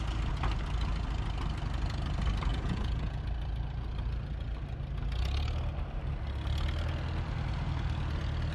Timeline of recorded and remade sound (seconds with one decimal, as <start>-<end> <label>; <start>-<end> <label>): 0.0-2.5 recorded; 2.5-3.2 remade; 3.2-8.5 recorded